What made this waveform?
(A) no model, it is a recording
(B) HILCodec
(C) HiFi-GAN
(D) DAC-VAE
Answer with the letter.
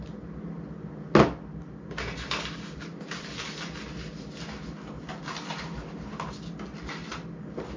A